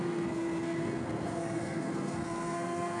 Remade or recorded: remade